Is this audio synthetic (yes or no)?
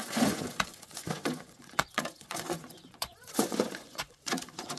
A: yes